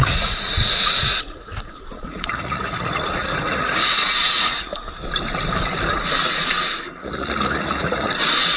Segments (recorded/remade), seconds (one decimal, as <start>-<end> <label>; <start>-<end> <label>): 0.0-4.7 remade; 4.7-5.9 recorded; 5.9-8.6 remade